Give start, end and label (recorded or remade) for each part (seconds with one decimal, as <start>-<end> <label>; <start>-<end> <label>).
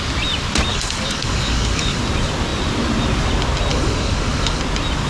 0.0-0.7 recorded; 0.7-2.0 remade; 2.0-3.7 recorded; 3.7-4.6 remade; 4.6-5.1 recorded